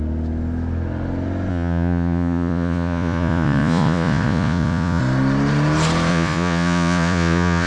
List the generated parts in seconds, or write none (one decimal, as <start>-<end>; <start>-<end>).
1.5-5.0; 6.1-7.7